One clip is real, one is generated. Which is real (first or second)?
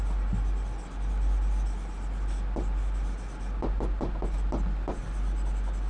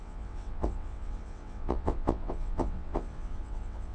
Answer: first